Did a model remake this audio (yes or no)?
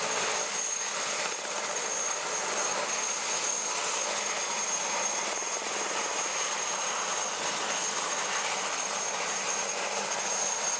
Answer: no